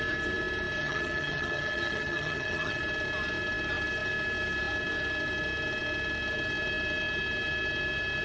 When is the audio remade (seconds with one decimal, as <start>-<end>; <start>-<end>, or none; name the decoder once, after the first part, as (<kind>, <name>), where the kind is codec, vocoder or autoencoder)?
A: 0.8-2.8 (vocoder, HiFi-GAN)